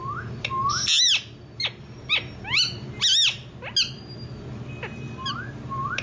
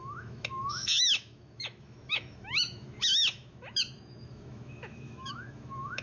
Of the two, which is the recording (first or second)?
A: first